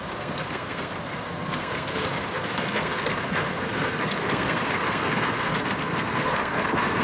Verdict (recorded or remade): remade